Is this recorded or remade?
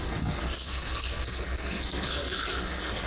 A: remade